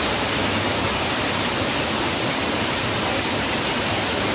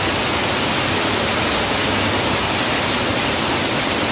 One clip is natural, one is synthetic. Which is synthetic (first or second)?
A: first